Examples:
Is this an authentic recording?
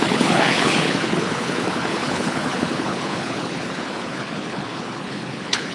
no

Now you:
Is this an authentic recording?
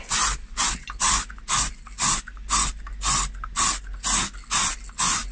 yes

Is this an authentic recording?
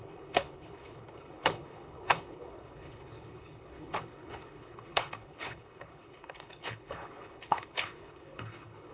no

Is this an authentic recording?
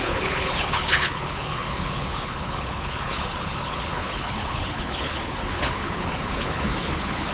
no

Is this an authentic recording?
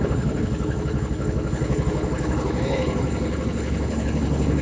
no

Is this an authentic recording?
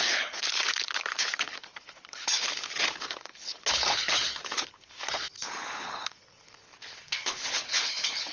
no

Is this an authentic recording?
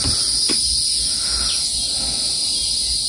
yes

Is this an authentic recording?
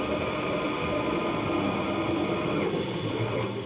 yes